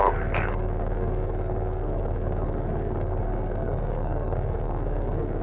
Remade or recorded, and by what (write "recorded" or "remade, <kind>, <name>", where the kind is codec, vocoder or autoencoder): remade, codec, SNAC